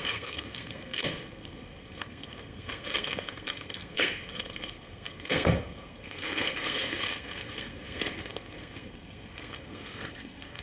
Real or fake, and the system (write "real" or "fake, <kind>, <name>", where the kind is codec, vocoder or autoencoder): fake, codec, SNAC